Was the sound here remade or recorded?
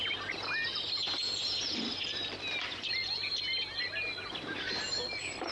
recorded